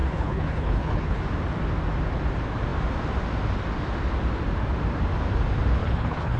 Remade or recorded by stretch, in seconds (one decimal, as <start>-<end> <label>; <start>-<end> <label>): 0.0-1.2 remade; 1.2-5.8 recorded; 5.8-6.4 remade

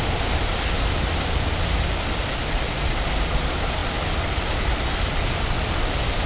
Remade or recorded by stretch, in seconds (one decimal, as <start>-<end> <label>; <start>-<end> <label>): 0.0-6.3 recorded

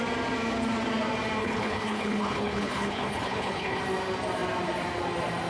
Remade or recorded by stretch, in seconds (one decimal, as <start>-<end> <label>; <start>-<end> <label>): 0.0-1.4 recorded; 1.4-3.8 remade; 3.8-5.5 recorded

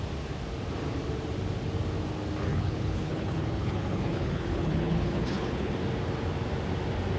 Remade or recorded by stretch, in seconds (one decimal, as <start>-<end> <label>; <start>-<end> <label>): 0.0-2.5 recorded; 2.5-5.7 remade; 5.7-7.2 recorded

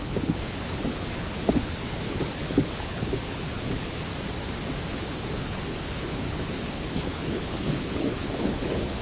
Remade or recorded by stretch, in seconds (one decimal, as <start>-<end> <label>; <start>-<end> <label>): 0.0-4.1 remade; 4.1-4.9 recorded; 4.9-9.0 remade

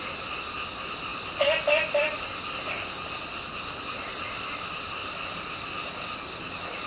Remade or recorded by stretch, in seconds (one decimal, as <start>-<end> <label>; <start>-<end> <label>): 0.0-6.9 recorded

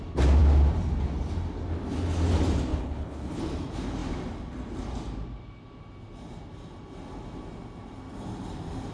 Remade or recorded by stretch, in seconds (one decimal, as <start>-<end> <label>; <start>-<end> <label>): 0.0-2.7 recorded; 2.7-3.4 remade; 3.4-8.9 recorded

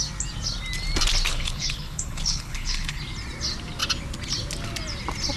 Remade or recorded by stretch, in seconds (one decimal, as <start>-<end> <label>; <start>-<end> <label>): 0.0-1.3 recorded; 1.3-3.0 remade; 3.0-5.4 recorded